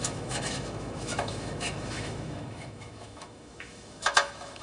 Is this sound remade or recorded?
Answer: remade